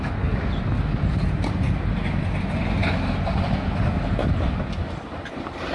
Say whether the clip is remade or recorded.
recorded